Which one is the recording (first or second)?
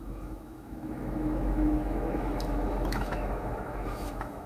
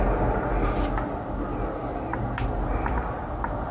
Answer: second